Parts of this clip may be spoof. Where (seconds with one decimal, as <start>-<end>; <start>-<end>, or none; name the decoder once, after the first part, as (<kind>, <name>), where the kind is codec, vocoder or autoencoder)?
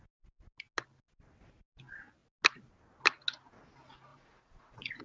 4.1-5.0 (vocoder, Vocos)